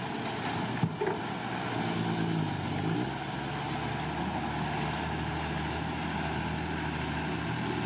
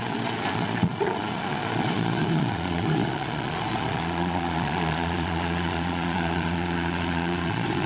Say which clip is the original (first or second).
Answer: first